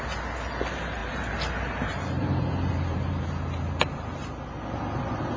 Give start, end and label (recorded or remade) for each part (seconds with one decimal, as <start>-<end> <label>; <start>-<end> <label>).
0.0-1.0 recorded; 1.0-3.2 remade; 3.2-5.4 recorded